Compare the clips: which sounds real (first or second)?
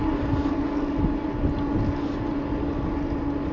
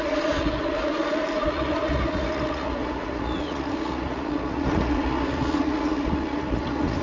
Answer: first